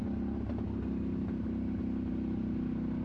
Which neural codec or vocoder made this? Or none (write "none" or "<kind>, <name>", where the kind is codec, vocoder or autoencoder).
none